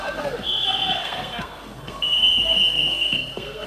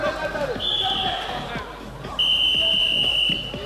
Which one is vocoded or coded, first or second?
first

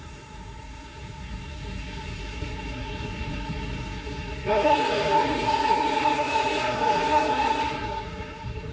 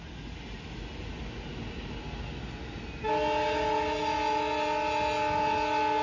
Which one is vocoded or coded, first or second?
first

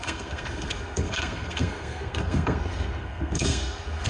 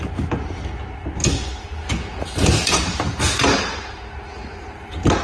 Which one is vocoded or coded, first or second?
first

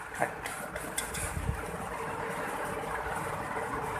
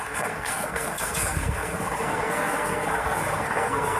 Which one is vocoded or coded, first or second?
second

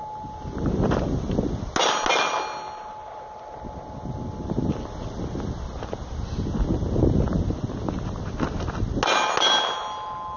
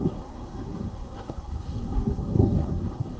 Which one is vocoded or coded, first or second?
second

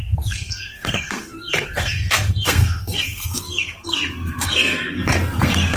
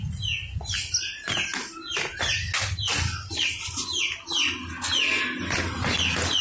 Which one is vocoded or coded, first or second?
first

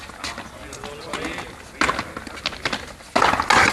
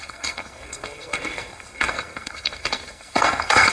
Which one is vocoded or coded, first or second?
second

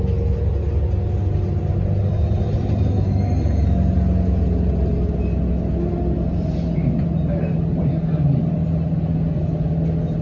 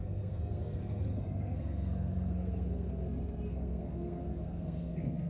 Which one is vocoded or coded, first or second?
second